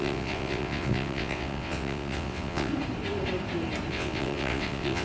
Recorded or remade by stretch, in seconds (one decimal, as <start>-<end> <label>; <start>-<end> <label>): 0.0-2.7 remade; 2.7-3.9 recorded; 3.9-5.0 remade